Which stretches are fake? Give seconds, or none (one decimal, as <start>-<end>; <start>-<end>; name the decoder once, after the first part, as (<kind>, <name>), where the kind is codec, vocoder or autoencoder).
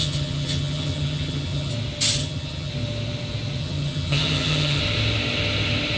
0.0-1.7 (vocoder, HiFi-GAN); 2.2-2.7; 3.6-4.8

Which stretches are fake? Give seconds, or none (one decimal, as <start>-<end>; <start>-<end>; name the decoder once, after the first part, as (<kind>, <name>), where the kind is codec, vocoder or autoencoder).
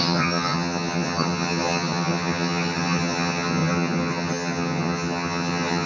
0.0-5.9 (vocoder, HiFi-GAN)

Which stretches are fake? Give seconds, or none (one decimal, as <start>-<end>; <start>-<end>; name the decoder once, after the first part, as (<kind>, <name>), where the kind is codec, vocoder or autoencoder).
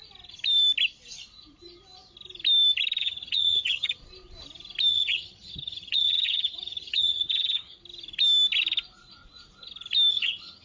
3.0-4.0 (vocoder, HiFi-GAN); 4.9-7.8; 10.1-10.6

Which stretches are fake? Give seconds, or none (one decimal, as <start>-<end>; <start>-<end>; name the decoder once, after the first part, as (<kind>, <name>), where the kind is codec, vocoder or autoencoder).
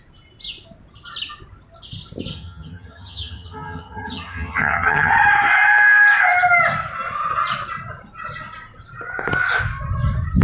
2.3-5.1 (vocoder, HiFi-GAN)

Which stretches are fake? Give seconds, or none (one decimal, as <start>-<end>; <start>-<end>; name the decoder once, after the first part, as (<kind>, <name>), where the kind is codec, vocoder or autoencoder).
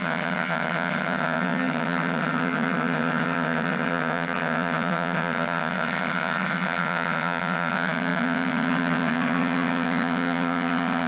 0.0-11.1 (vocoder, HiFi-GAN)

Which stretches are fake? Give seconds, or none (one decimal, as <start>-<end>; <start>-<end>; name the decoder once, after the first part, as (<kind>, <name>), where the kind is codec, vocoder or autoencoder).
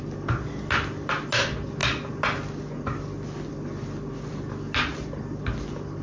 none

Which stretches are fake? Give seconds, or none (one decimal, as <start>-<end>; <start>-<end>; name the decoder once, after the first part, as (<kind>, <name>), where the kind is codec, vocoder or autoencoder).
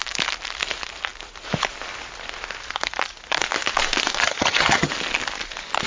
4.2-4.9 (vocoder, HiFi-GAN)